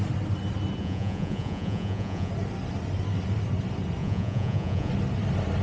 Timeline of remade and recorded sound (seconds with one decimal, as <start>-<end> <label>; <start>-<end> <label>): 0.0-0.8 recorded; 0.8-2.3 remade; 2.3-4.0 recorded; 4.0-4.9 remade; 4.9-5.6 recorded